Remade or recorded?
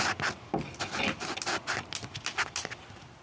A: recorded